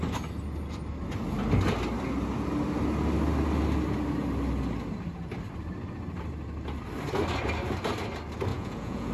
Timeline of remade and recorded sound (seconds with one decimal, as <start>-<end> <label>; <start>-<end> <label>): 0.0-8.5 recorded; 8.5-9.1 remade